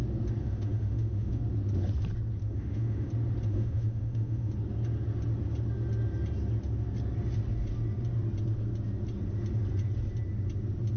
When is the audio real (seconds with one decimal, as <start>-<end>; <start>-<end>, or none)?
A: 0.0-0.4; 1.4-2.4; 3.1-3.5; 4.5-11.0